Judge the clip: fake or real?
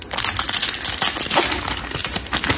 real